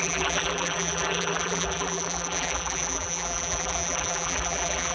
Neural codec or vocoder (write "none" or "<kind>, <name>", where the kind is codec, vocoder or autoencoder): vocoder, BigVGAN v2